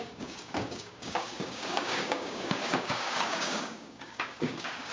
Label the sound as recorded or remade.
remade